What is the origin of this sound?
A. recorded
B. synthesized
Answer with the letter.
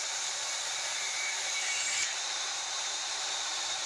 B